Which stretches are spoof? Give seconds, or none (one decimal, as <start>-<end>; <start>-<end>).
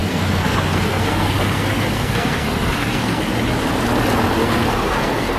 0.0-3.2; 4.4-5.4